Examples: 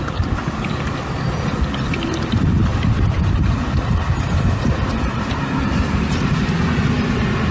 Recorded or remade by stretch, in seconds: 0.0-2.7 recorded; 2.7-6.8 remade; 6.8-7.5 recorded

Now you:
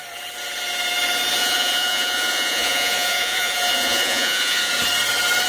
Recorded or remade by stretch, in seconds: 0.0-1.4 recorded; 1.4-4.7 remade; 4.7-5.5 recorded